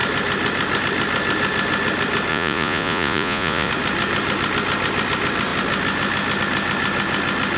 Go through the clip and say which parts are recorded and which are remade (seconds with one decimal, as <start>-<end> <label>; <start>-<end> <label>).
0.0-2.3 recorded; 2.3-3.7 remade; 3.7-7.6 recorded